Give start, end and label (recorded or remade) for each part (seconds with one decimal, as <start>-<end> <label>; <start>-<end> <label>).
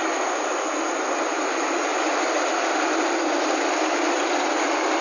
0.0-1.9 recorded; 1.9-2.5 remade; 2.5-5.0 recorded